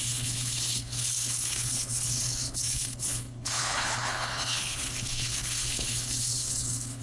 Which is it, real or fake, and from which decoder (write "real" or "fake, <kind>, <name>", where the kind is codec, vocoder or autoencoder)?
fake, codec, HILCodec